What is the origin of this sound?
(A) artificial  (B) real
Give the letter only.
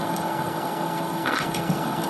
A